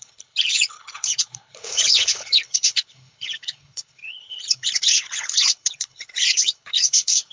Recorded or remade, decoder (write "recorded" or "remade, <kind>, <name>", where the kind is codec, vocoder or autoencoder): remade, codec, HILCodec